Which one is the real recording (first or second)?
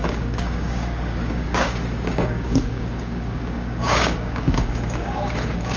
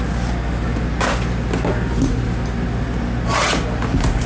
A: second